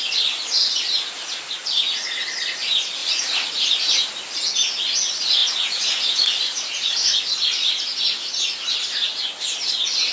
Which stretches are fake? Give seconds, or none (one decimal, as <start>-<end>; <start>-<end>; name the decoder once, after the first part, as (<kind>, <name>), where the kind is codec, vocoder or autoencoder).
3.0-3.7 (vocoder, Vocos); 5.4-8.0